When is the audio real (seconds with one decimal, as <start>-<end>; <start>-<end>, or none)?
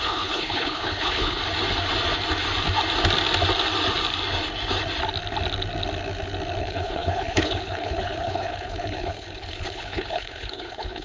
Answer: 1.4-6.6